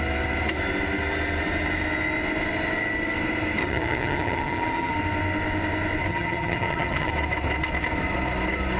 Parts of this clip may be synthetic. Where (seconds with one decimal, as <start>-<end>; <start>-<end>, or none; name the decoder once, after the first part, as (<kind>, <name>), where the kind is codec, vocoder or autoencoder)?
3.6-4.9 (vocoder, HiFi-GAN); 6.1-7.1